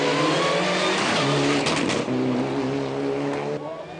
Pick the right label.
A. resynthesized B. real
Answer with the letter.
B